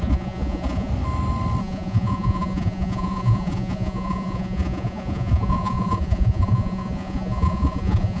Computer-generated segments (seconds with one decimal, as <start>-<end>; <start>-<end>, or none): 0.0-0.9; 1.6-8.2